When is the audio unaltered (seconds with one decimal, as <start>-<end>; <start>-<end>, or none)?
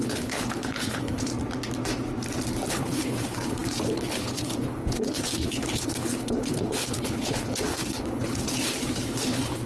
1.3-2.7